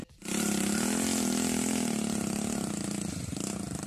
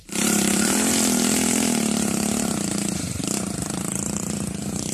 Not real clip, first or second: second